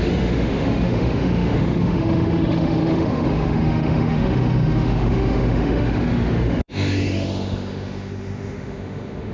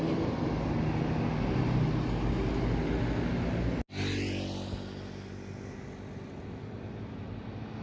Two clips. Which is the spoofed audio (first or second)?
first